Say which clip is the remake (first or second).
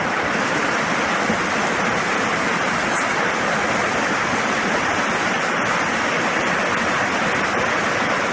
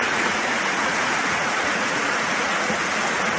second